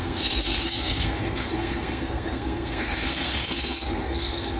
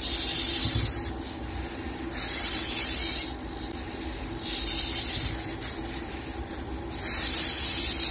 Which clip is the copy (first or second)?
first